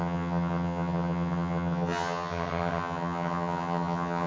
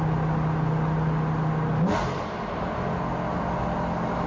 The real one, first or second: second